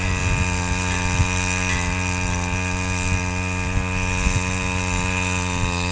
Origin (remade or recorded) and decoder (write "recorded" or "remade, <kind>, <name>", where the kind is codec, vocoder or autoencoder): recorded